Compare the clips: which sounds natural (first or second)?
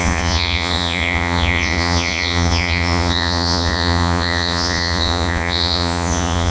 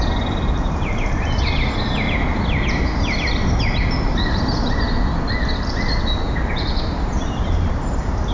second